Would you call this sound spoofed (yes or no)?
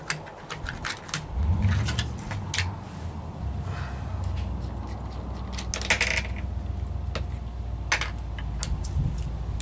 no